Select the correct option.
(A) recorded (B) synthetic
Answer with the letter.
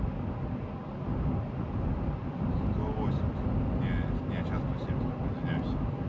A